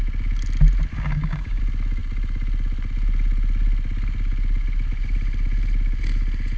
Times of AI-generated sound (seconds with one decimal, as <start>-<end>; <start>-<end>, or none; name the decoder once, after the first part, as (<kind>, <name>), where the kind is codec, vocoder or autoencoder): 0.9-1.6 (codec, DAC)